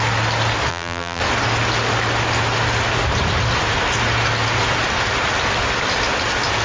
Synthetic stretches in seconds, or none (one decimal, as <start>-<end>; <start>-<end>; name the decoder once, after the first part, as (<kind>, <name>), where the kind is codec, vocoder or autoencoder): 0.7-1.2 (vocoder, BigVGAN v2)